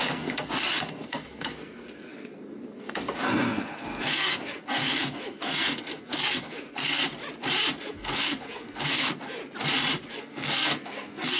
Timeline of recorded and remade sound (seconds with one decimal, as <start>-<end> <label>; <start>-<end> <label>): 0.0-7.0 remade; 7.0-7.8 recorded; 7.8-9.4 remade; 9.4-10.1 recorded; 10.1-11.4 remade